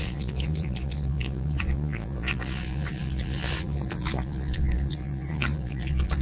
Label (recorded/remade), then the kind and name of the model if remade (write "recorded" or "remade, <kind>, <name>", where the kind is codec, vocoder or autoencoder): remade, vocoder, Vocos